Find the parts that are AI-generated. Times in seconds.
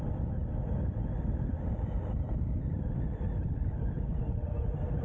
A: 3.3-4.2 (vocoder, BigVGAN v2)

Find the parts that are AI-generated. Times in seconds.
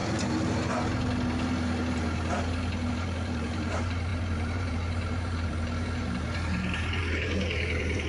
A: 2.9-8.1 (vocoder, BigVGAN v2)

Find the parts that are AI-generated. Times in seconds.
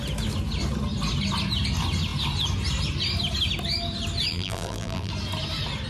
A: 4.3-5.1 (vocoder, BigVGAN v2)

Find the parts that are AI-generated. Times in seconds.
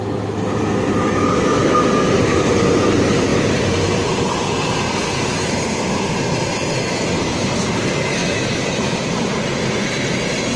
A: 3.3-6.0 (vocoder, BigVGAN v2); 8.2-9.1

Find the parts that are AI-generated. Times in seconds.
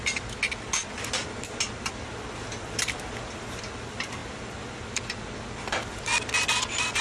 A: none